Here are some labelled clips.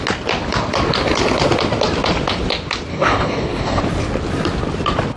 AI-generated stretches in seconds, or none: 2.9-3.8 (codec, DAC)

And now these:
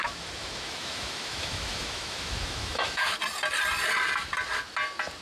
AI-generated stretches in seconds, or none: 0.0-3.1 (autoencoder, DAC-VAE)

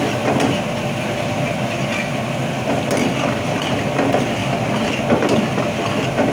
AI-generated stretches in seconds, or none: 2.1-3.8 (vocoder, BigVGAN v2); 4.4-5.4

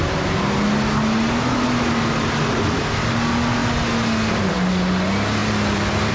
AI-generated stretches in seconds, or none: none

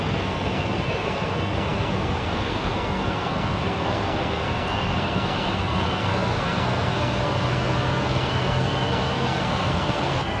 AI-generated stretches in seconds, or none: 0.0-10.4 (codec, SNAC)

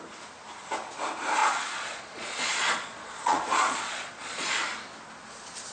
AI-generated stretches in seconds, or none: 1.4-4.6 (vocoder, Vocos)